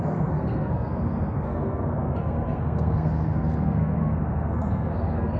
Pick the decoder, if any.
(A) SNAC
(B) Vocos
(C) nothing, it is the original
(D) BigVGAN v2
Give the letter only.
A